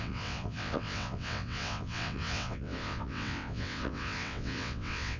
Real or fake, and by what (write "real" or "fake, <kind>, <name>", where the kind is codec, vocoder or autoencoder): fake, vocoder, WaveNeXt